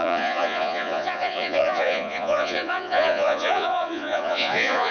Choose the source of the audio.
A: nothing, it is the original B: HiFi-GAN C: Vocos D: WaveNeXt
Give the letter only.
C